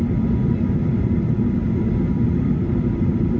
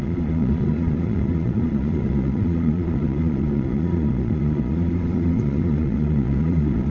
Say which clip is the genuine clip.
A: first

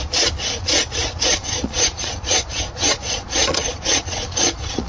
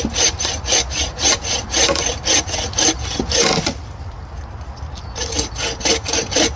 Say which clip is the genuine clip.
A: second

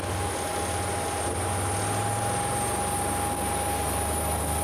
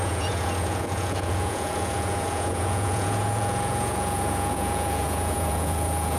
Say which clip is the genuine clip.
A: first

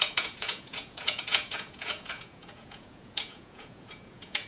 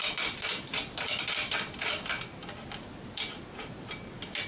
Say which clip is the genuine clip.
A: second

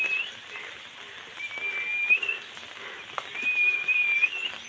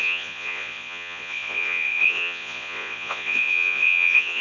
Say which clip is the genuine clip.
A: first